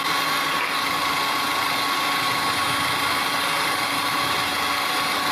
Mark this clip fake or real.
real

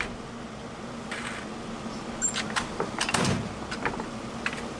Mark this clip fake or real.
real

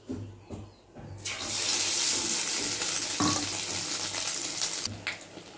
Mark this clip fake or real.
real